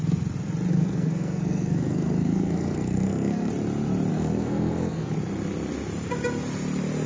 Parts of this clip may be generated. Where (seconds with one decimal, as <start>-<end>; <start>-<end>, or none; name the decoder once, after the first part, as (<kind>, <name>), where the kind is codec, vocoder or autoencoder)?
0.7-3.5 (codec, SNAC); 4.1-5.1